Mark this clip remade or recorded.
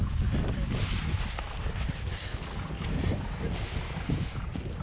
recorded